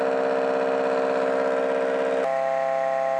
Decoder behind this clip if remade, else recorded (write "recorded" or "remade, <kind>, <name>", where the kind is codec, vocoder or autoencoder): recorded